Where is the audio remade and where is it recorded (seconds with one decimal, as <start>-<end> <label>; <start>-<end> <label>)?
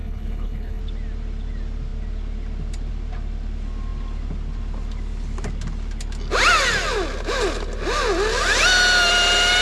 0.0-0.8 remade; 0.8-9.6 recorded